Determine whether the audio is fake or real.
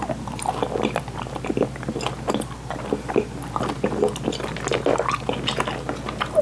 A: real